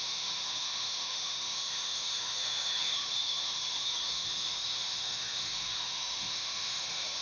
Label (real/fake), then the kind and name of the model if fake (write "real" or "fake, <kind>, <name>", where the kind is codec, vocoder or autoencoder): fake, autoencoder, DAC-VAE